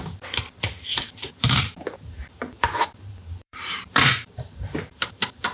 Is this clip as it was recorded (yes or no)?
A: no